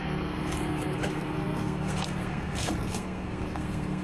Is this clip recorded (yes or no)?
no